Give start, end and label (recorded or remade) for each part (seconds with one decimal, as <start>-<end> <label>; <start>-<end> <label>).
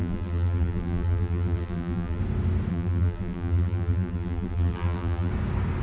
0.0-2.2 remade; 2.2-2.7 recorded; 2.7-5.3 remade; 5.3-5.8 recorded